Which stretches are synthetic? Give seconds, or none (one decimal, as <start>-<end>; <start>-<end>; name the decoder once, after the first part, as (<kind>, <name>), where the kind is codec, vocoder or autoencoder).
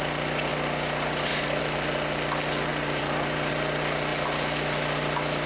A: 2.7-3.5 (vocoder, BigVGAN v2)